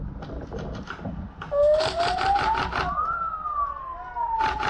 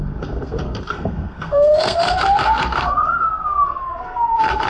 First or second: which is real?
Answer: first